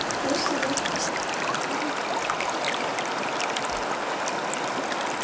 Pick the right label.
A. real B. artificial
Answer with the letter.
A